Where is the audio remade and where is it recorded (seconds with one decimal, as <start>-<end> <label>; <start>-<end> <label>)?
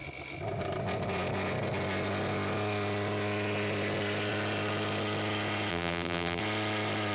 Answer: 0.0-5.7 recorded; 5.7-6.4 remade; 6.4-7.1 recorded